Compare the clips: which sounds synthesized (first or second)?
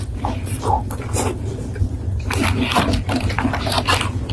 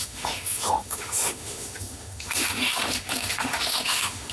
second